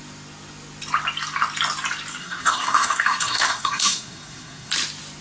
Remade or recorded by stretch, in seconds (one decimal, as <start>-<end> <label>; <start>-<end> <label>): 0.0-2.2 recorded; 2.2-4.7 remade; 4.7-5.2 recorded